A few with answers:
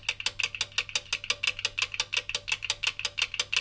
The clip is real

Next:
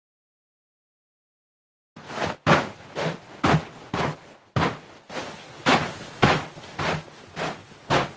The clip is real